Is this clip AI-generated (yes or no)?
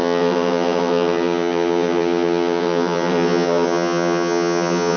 yes